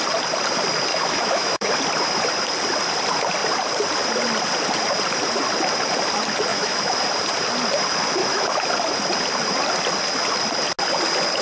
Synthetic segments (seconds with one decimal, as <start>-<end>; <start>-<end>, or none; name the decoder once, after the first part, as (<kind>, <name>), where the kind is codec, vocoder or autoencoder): 0.9-1.7 (autoencoder, DAC-VAE); 6.5-7.0; 8.2-8.7